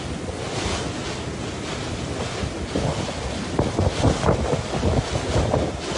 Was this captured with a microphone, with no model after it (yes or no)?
yes